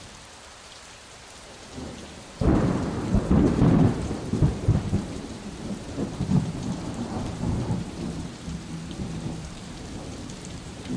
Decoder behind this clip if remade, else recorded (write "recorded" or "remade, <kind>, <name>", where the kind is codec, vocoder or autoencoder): remade, vocoder, BigVGAN v2